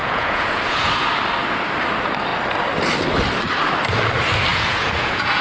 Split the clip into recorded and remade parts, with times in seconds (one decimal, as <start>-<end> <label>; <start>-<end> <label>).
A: 0.0-0.9 remade; 0.9-4.5 recorded; 4.5-5.4 remade